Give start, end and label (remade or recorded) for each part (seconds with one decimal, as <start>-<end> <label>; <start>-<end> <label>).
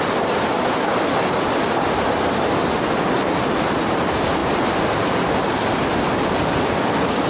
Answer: 0.0-7.3 recorded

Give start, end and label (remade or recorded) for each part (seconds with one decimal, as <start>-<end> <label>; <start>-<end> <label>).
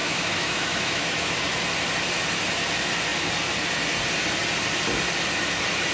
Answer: 0.0-1.4 remade; 1.4-5.9 recorded